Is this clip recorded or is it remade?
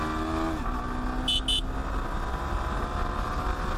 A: recorded